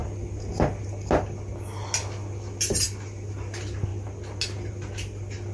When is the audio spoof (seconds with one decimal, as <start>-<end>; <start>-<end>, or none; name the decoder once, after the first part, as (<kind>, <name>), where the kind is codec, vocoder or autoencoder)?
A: none